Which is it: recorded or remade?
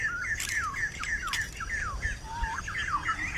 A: recorded